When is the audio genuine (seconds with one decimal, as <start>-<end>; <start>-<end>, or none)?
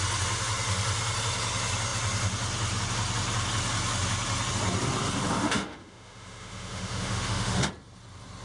0.0-5.4; 7.7-8.4